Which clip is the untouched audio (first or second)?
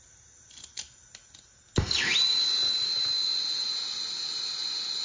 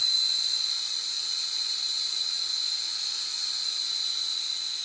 first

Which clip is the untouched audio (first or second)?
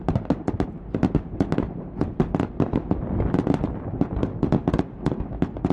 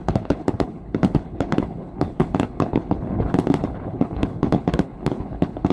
first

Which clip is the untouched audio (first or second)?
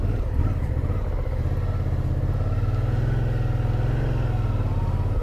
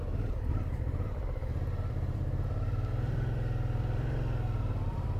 first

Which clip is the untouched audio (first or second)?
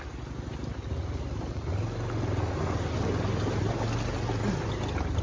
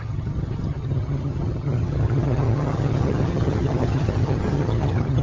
first